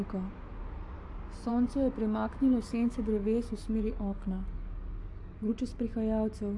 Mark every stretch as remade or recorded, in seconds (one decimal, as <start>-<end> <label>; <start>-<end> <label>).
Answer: 0.0-1.5 recorded; 1.5-5.5 remade; 5.5-6.6 recorded